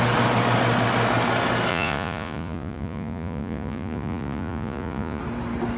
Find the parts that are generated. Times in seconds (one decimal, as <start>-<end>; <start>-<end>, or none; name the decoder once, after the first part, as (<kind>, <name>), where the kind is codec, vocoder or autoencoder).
1.7-5.2 (vocoder, Vocos)